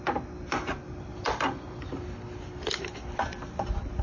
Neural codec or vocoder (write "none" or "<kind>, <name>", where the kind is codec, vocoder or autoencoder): none